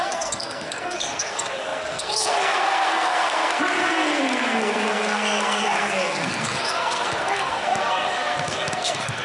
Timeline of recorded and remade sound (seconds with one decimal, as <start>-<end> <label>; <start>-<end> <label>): 0.0-9.2 remade